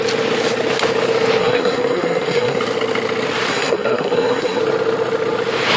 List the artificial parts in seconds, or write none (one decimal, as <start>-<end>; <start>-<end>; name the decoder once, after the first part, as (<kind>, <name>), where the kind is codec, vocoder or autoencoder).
1.4-2.6 (codec, SNAC); 3.5-4.6